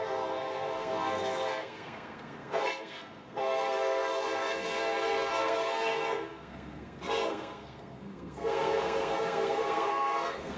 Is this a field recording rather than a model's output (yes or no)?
no